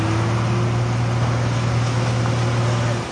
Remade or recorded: recorded